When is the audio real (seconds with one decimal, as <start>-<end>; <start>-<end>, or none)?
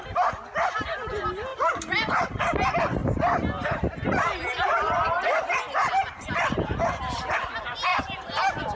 0.0-1.5; 2.4-3.0; 6.5-7.9